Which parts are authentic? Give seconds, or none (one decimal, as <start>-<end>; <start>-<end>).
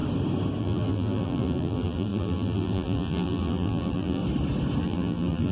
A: 0.0-0.6; 4.2-4.8